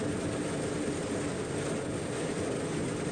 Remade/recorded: recorded